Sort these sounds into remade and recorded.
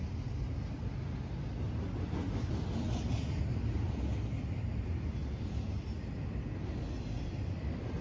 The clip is recorded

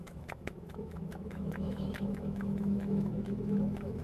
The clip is remade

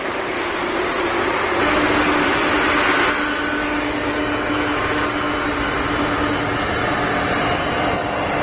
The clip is recorded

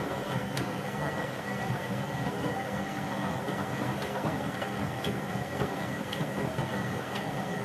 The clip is remade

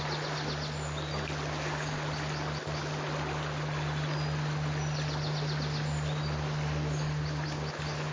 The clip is recorded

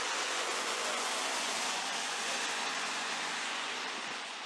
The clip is remade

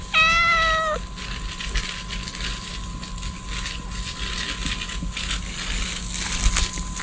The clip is recorded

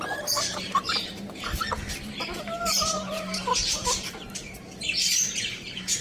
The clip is remade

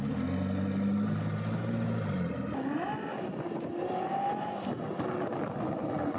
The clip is recorded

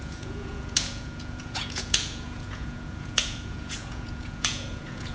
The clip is remade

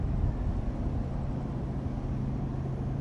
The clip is recorded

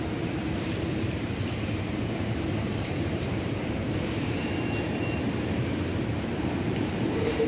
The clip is remade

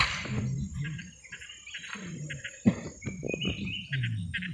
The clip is remade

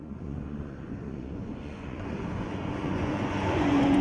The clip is remade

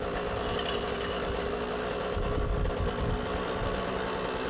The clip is recorded